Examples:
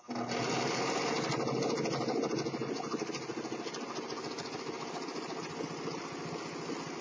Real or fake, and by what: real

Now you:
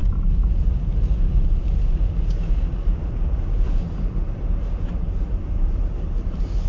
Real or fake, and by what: fake, vocoder, BigVGAN v2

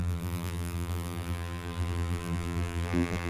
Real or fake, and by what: fake, vocoder, BigVGAN v2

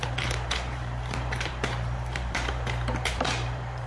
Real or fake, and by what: fake, vocoder, BigVGAN v2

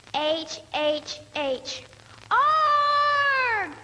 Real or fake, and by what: real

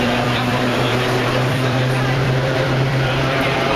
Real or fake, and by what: fake, vocoder, BigVGAN v2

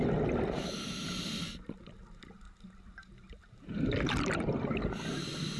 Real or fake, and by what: real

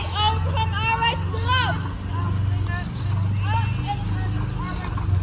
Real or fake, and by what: real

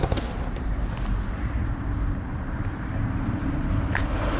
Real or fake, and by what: fake, vocoder, BigVGAN v2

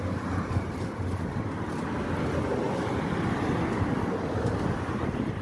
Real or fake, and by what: real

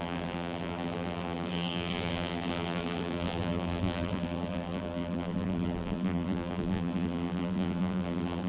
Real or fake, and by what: fake, vocoder, BigVGAN v2